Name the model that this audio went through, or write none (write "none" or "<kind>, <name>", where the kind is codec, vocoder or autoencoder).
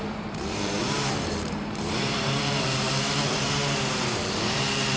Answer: vocoder, BigVGAN v2